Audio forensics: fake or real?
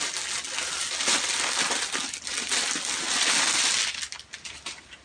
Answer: real